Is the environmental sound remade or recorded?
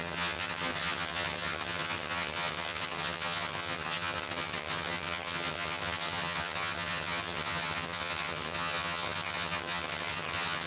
remade